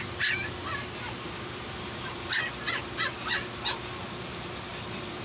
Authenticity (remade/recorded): recorded